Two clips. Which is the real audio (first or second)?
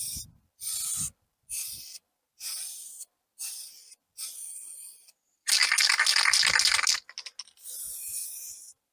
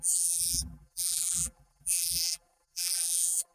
first